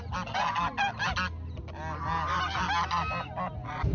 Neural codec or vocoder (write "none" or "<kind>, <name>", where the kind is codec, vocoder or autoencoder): none